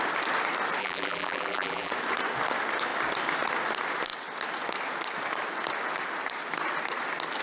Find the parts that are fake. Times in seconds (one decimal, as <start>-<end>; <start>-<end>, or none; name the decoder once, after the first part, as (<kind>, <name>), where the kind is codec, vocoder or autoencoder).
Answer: 0.8-1.9 (vocoder, BigVGAN v2)